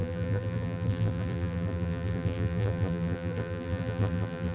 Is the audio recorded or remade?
remade